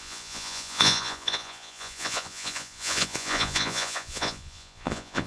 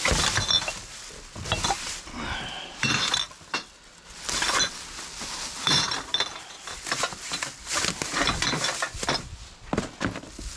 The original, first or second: second